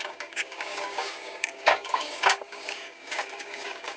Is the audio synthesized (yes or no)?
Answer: yes